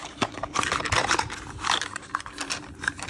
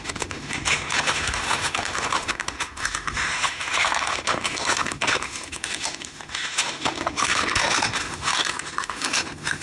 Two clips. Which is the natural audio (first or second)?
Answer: first